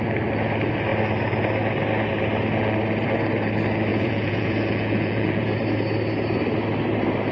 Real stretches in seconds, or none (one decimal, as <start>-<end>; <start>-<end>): 0.0-3.9; 5.6-7.3